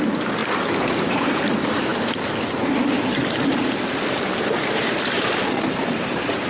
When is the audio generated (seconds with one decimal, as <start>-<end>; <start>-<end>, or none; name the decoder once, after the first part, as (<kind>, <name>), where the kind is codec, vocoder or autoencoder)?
0.4-1.3 (vocoder, BigVGAN v2); 3.5-6.5